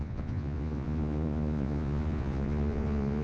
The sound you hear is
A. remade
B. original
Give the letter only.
A